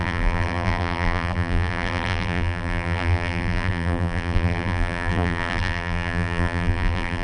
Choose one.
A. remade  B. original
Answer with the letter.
A